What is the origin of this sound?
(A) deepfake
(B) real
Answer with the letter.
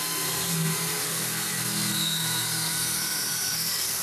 A